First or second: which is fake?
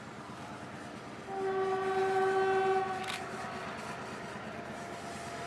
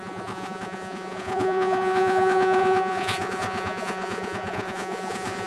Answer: second